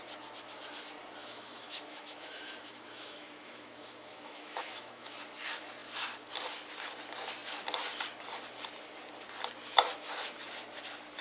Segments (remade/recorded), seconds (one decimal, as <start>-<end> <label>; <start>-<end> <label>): 0.0-1.2 recorded; 1.2-5.2 remade; 5.2-11.2 recorded